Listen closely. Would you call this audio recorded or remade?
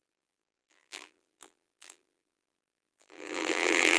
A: remade